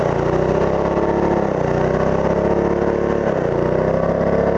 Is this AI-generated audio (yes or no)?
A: no